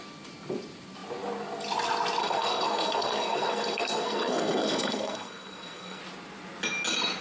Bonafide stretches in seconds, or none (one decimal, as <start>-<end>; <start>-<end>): 0.0-2.2; 6.0-7.2